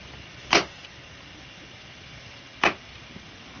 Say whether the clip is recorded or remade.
recorded